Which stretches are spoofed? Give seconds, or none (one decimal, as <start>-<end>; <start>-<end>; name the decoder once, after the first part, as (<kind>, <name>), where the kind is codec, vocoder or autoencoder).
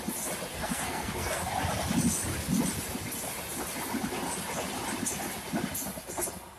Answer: 0.5-1.5 (codec, SNAC)